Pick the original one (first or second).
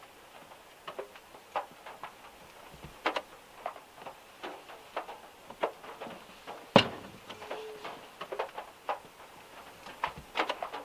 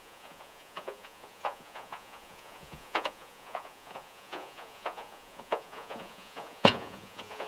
first